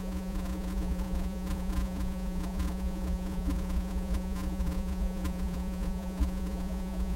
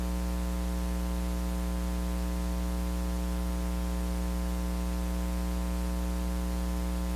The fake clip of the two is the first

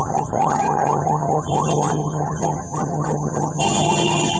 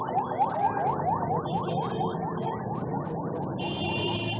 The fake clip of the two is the first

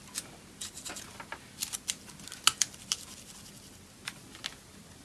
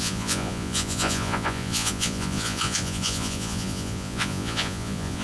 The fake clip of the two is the second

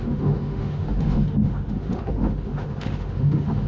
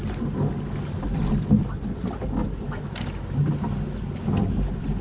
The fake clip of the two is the first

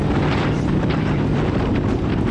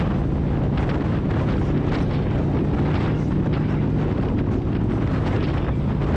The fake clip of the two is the first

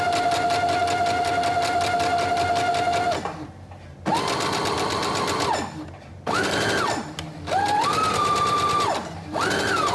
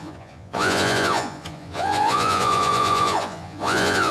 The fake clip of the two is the second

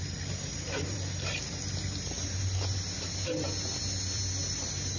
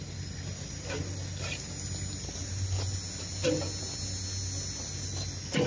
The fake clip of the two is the first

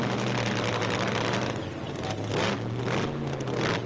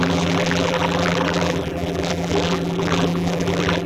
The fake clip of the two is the second